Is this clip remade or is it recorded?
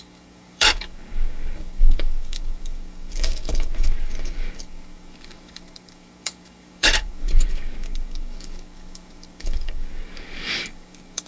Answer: remade